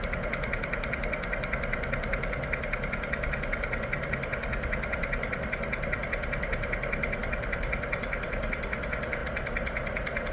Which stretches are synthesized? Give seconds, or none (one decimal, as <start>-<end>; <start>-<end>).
none